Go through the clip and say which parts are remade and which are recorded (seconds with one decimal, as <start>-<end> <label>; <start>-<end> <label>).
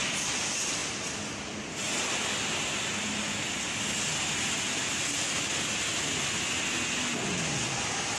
0.0-8.2 recorded